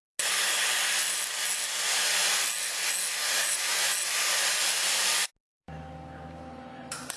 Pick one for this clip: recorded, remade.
recorded